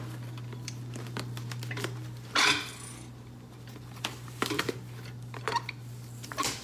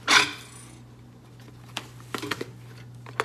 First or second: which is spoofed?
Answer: first